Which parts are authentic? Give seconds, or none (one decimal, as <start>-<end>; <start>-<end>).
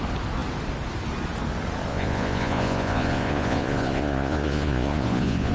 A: 0.0-1.9